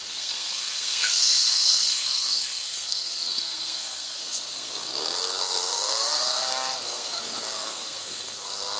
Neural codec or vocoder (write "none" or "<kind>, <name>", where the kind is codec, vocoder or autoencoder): codec, SNAC